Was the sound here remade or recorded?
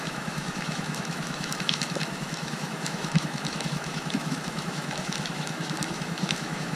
remade